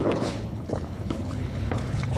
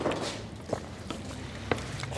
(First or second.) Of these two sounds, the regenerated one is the first